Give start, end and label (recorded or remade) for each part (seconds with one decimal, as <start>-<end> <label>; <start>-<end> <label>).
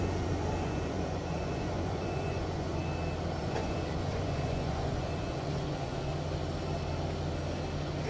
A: 0.0-2.8 remade; 2.8-3.4 recorded; 3.4-6.1 remade; 6.1-8.1 recorded